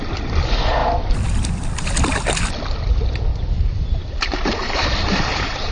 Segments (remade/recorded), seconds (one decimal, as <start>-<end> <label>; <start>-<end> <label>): 0.0-3.3 recorded; 3.3-5.7 remade